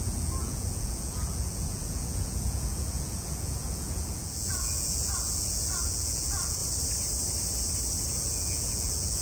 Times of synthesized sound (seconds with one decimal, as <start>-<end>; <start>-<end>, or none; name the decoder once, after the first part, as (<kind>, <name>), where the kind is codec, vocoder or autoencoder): 0.0-6.6 (vocoder, Vocos); 8.1-9.2